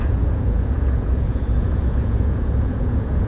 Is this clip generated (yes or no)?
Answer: yes